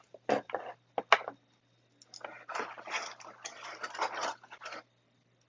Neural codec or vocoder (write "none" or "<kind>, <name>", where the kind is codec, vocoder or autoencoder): none